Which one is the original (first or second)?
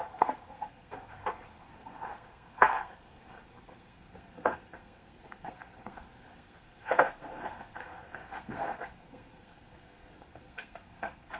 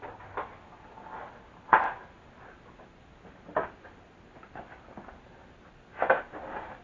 second